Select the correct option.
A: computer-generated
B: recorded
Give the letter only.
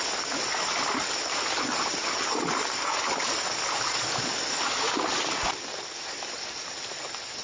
B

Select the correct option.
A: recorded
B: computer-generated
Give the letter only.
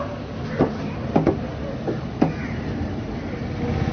A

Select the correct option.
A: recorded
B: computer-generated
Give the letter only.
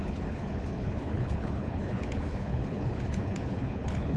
B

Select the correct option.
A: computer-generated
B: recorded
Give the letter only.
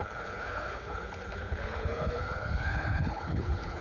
A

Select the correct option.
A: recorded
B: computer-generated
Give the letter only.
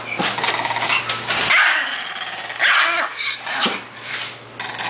A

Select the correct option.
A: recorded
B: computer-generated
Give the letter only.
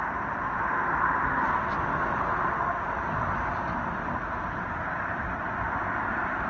A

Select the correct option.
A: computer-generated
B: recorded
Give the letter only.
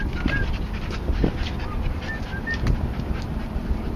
B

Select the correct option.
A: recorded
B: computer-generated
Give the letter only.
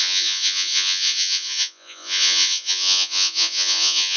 B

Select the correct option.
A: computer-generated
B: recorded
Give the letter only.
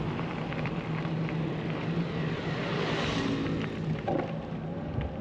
B